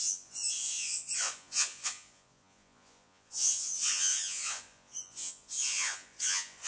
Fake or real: fake